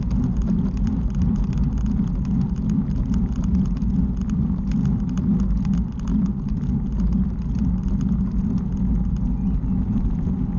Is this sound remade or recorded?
recorded